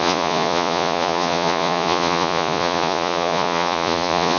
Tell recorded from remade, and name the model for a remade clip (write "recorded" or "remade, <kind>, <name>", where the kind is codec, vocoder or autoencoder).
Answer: remade, vocoder, Vocos